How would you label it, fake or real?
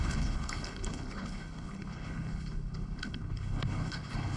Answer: fake